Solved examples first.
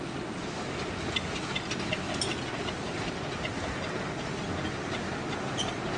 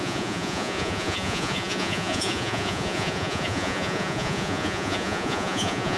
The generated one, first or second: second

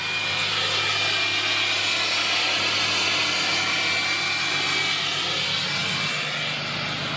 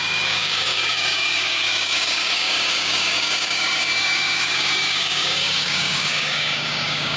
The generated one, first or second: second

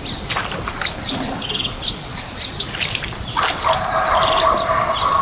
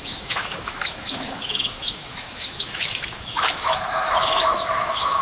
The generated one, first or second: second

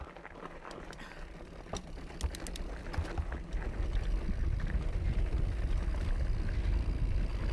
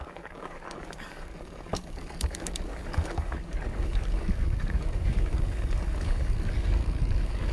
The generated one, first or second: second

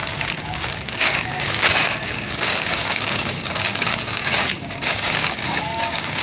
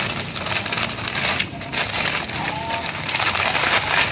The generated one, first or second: first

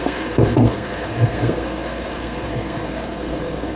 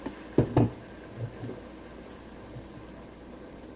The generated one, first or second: first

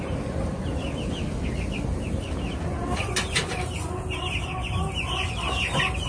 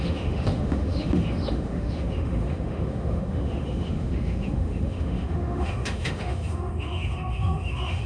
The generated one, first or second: second